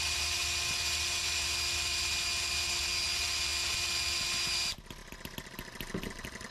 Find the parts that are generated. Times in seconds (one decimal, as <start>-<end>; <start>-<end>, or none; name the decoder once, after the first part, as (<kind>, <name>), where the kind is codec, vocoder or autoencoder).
none